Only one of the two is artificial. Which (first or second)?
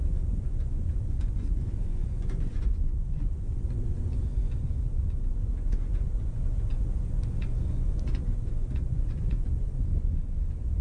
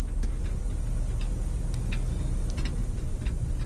first